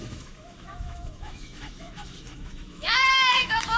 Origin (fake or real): fake